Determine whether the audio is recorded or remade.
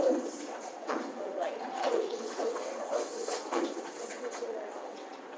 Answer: remade